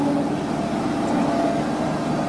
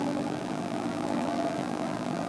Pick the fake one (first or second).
second